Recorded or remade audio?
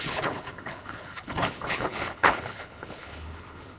remade